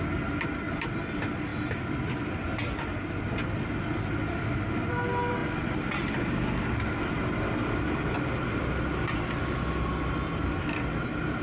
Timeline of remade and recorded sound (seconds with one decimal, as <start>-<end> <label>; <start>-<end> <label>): 0.0-11.4 recorded